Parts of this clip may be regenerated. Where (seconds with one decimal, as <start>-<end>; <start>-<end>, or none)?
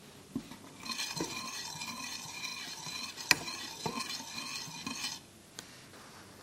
none